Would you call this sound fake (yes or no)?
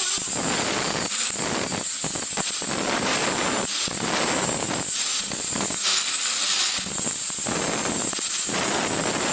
no